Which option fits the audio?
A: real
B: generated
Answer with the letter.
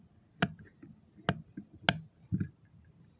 A